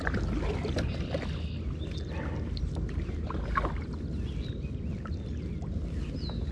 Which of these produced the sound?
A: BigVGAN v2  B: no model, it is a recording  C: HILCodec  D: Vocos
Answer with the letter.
B